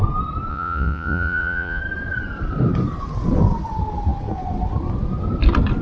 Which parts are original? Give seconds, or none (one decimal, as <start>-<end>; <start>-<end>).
0.0-0.5; 1.8-5.8